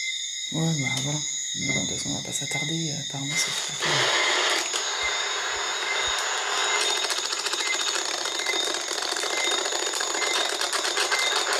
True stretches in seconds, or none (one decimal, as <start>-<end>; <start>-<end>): 0.0-11.6